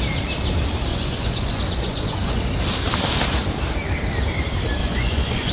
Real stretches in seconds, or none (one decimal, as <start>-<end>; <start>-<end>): 0.0-0.9; 2.4-4.8